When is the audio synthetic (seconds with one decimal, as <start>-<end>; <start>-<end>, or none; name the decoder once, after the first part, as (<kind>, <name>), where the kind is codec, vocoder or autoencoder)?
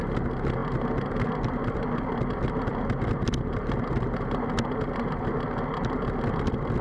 none